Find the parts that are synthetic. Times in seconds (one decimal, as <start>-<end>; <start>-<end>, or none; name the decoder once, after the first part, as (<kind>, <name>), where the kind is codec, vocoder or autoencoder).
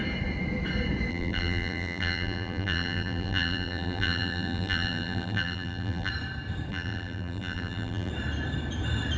1.1-6.1 (vocoder, BigVGAN v2); 6.7-8.1